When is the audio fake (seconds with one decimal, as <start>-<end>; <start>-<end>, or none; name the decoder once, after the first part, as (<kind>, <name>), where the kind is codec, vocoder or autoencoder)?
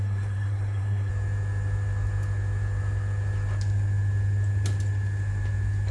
0.0-1.1 (codec, SNAC)